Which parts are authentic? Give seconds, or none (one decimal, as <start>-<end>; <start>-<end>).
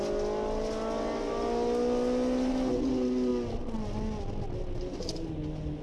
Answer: 0.0-5.8